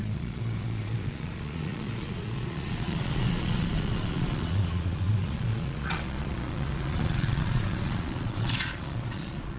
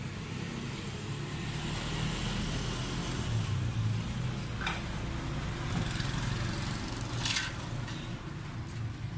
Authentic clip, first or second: second